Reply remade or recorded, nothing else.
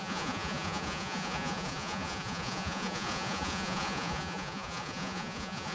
remade